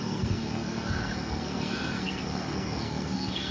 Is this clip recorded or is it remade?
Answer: remade